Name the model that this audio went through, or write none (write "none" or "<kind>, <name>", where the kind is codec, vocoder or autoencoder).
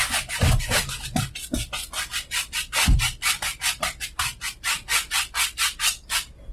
none